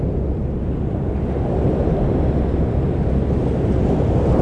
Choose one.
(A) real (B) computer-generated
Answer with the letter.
A